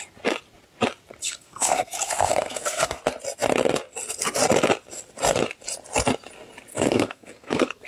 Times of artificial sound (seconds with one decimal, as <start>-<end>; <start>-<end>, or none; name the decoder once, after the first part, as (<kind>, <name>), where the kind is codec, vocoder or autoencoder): 1.2-3.0 (codec, SNAC); 6.7-7.9